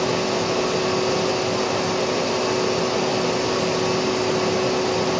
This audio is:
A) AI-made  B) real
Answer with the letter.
B